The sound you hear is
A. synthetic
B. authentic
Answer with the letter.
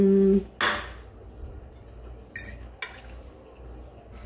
B